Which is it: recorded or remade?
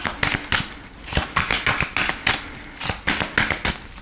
recorded